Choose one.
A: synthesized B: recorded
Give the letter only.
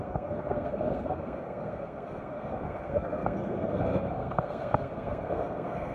A